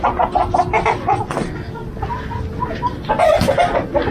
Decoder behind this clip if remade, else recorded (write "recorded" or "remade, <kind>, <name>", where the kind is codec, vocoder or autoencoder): recorded